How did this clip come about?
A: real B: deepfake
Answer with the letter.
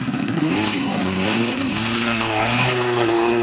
B